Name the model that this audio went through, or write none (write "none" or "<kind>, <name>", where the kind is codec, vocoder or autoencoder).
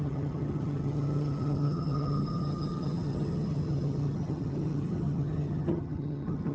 vocoder, HiFi-GAN